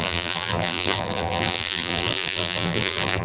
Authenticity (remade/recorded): remade